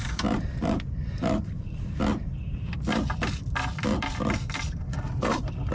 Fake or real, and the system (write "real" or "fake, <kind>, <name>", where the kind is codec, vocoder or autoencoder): fake, vocoder, BigVGAN v2